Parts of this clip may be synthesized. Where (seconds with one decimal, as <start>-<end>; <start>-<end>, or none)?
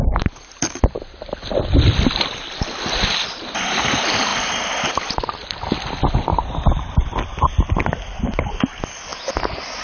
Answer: none